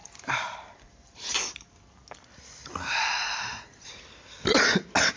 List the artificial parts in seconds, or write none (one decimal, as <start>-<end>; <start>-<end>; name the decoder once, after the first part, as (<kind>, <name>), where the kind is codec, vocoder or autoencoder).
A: 0.0-1.4 (vocoder, BigVGAN v2); 2.6-4.0